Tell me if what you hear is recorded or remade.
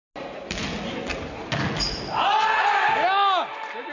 recorded